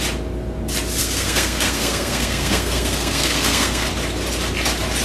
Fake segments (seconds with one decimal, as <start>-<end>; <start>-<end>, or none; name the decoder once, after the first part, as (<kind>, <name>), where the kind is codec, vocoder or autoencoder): 1.0-3.9 (codec, SNAC)